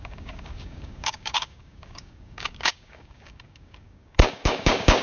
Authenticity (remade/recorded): remade